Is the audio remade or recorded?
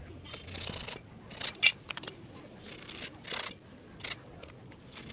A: recorded